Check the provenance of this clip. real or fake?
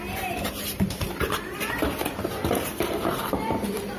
fake